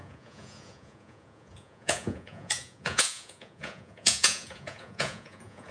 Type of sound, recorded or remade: remade